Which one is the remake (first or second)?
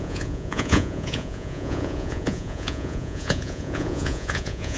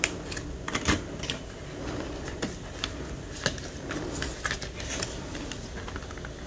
first